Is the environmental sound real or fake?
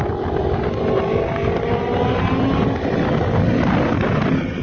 real